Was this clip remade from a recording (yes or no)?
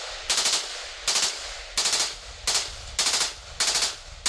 no